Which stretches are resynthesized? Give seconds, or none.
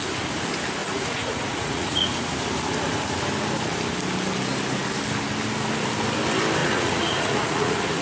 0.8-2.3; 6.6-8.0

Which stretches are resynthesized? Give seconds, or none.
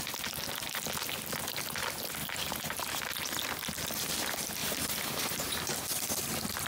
2.2-3.0; 4.6-6.0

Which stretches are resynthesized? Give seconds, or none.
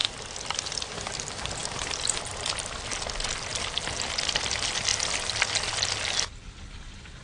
none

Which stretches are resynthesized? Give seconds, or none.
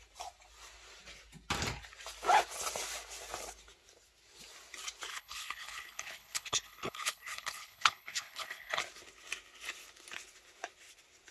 5.1-8.8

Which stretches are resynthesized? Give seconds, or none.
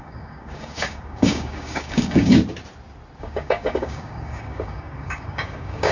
0.0-2.4; 3.2-5.9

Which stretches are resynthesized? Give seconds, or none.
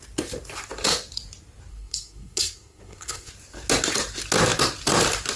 1.7-3.3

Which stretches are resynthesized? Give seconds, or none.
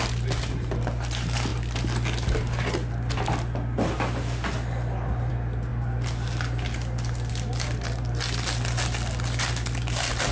none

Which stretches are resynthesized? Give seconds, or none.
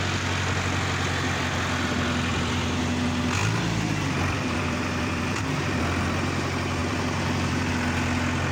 2.3-2.8; 3.4-5.8; 6.8-7.7